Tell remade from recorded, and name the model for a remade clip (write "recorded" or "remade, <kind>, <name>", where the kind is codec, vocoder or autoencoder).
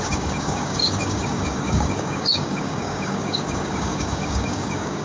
remade, codec, DAC